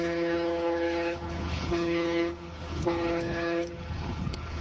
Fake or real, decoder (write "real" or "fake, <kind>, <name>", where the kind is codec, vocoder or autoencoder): fake, codec, HILCodec